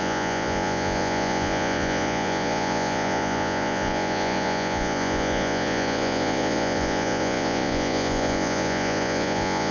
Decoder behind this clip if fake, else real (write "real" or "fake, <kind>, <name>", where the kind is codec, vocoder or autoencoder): fake, vocoder, Vocos